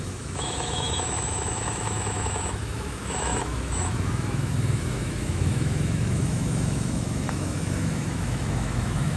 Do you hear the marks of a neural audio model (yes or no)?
yes